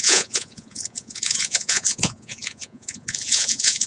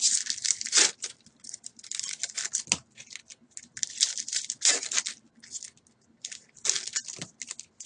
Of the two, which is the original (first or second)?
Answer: second